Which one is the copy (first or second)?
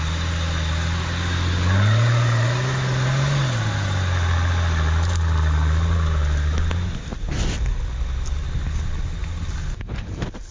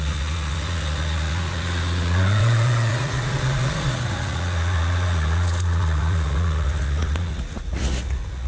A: second